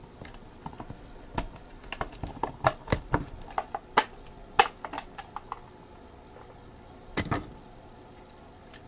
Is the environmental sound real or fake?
real